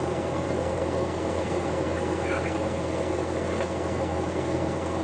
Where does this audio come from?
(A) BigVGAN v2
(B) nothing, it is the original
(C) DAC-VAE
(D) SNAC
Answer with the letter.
D